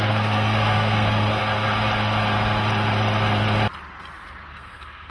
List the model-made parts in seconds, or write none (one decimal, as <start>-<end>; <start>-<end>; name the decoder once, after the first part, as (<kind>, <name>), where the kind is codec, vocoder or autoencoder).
0.0-1.4 (codec, SNAC); 4.5-5.1